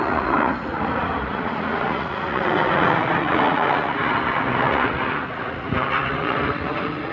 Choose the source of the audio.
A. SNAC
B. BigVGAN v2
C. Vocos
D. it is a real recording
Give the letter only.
C